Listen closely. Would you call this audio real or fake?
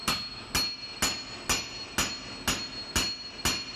real